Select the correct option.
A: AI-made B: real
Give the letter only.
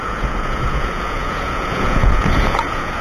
A